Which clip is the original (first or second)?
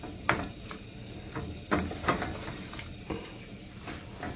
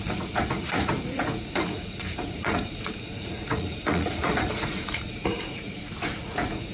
first